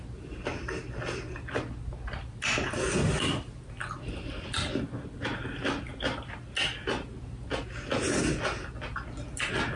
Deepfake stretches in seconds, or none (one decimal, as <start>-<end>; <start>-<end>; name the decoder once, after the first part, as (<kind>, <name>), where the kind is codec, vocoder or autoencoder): none